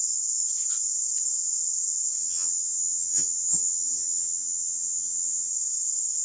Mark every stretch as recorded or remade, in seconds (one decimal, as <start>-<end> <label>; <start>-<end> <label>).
0.0-2.2 recorded; 2.2-5.5 remade; 5.5-6.2 recorded